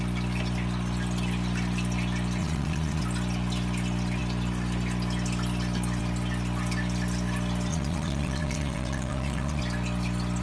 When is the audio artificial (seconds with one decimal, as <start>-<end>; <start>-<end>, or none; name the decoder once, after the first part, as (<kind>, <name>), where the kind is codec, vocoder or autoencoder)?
2.4-3.0 (vocoder, Vocos); 7.7-9.6